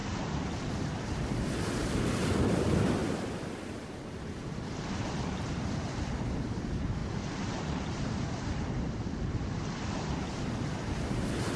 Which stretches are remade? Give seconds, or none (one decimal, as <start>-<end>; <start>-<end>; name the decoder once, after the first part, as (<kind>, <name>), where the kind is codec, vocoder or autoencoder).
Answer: 0.7-3.0 (vocoder, BigVGAN v2); 4.9-11.6